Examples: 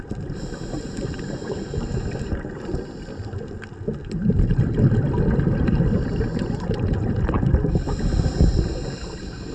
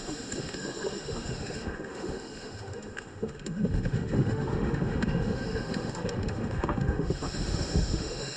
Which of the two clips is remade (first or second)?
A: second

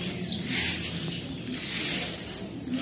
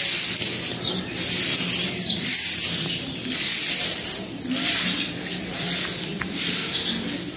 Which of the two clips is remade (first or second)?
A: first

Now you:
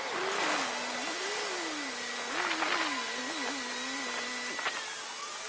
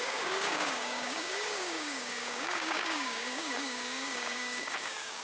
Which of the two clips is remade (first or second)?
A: second